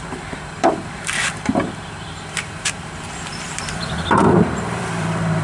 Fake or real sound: fake